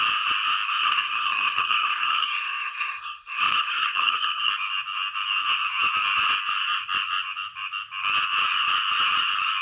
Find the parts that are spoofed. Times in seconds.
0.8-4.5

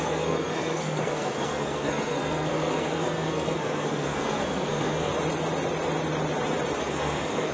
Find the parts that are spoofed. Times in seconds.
0.0-5.1; 6.8-7.5

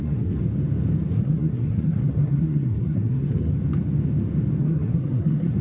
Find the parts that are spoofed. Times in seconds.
0.0-0.4; 1.1-3.5; 4.6-5.6

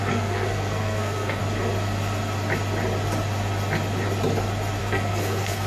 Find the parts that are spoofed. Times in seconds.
0.0-1.4; 4.8-5.7

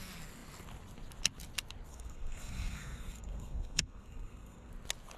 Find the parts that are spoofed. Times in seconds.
1.9-4.7

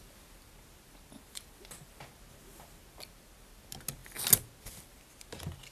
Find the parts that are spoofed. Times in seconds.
none

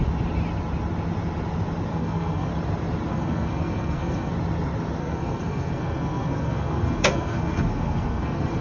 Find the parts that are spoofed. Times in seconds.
1.9-2.5; 3.1-4.3; 5.0-8.6